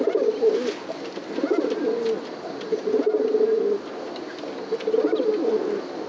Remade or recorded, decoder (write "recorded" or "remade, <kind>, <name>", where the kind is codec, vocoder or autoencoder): recorded